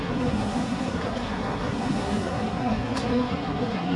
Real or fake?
fake